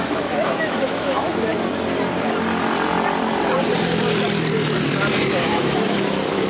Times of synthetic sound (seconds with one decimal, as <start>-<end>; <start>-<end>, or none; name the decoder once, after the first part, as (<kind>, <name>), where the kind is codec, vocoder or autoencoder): 0.0-1.5 (autoencoder, DAC-VAE); 5.4-6.5